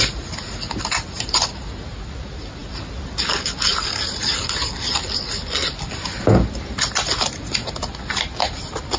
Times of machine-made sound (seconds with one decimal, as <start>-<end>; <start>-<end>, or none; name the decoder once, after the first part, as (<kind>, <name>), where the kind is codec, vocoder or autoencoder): 3.7-6.0 (vocoder, BigVGAN v2)